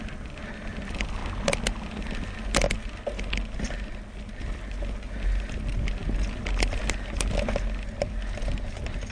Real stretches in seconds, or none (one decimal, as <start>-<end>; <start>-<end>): 0.0-9.1